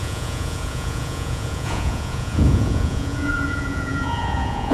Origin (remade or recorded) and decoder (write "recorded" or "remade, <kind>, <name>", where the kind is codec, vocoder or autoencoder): remade, vocoder, Vocos